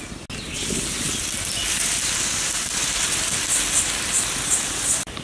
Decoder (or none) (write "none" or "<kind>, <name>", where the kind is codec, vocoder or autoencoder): none